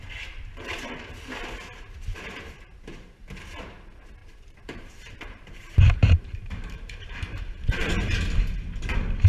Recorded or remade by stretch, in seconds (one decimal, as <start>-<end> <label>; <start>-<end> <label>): 0.0-4.2 recorded; 4.2-7.9 remade; 7.9-9.3 recorded